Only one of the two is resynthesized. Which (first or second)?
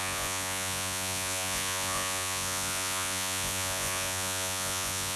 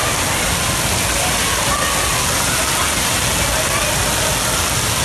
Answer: first